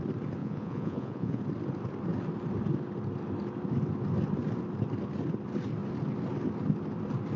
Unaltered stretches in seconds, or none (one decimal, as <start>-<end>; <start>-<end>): 0.0-0.4; 1.4-7.4